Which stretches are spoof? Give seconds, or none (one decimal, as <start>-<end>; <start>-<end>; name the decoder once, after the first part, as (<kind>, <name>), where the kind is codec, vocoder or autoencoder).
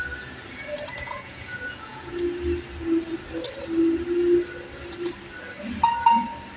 0.9-2.1 (vocoder, Vocos)